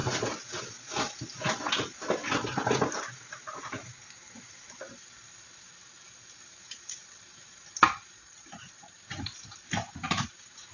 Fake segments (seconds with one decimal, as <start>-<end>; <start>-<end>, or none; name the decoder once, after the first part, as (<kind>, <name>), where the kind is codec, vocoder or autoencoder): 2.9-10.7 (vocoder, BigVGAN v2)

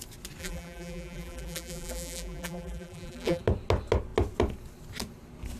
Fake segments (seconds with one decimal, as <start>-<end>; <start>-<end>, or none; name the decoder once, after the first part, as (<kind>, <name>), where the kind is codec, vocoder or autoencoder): 0.4-3.4 (vocoder, BigVGAN v2)

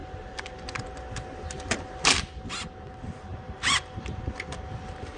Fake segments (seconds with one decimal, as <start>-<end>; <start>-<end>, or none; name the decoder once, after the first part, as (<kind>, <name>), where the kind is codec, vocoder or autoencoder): 3.3-4.0 (vocoder, BigVGAN v2)

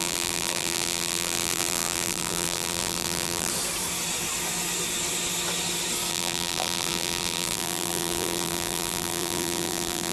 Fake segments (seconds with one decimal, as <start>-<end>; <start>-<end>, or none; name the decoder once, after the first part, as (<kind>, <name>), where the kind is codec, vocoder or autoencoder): 0.0-3.5 (vocoder, BigVGAN v2); 6.1-10.1